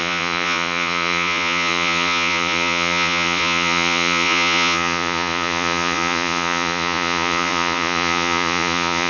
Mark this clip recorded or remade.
remade